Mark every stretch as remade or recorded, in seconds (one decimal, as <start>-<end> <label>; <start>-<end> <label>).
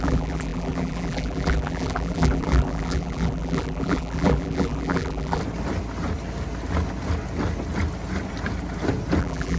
0.0-5.4 remade; 5.4-9.2 recorded; 9.2-9.6 remade